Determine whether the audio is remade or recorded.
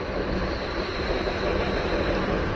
recorded